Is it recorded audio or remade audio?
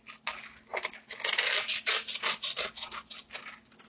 recorded